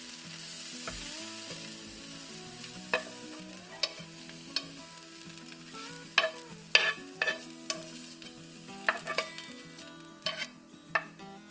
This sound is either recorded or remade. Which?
recorded